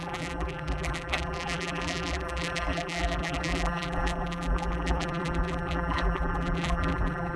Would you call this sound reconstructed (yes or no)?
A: yes